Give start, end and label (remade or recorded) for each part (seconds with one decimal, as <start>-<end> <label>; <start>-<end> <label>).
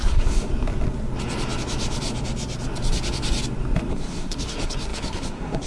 0.0-0.5 remade; 0.5-3.9 recorded; 3.9-5.7 remade